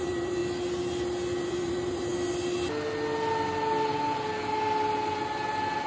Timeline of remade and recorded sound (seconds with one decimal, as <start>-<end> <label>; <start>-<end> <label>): 0.0-0.4 remade; 0.4-1.4 recorded; 1.4-2.1 remade; 2.1-5.9 recorded